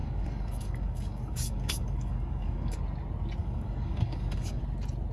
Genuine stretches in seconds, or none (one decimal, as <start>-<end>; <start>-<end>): 2.8-3.4; 4.6-5.1